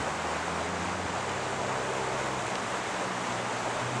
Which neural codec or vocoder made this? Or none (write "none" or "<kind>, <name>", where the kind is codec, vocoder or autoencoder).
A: none